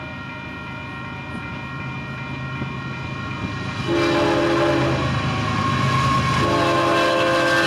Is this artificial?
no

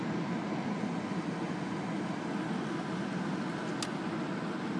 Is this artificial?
no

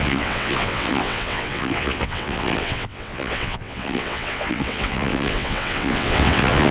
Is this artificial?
yes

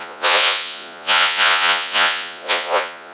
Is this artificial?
yes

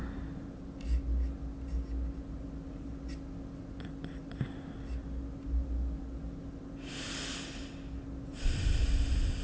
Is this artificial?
no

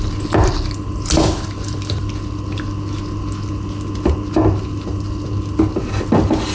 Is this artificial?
no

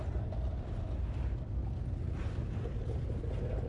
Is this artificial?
no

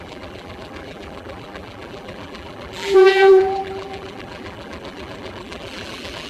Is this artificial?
yes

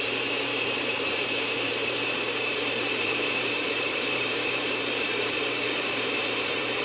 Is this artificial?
yes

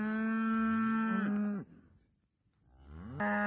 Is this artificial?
no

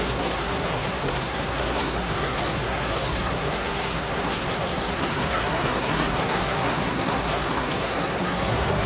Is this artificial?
yes